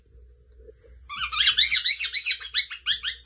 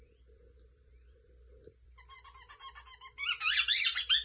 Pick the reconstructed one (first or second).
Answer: second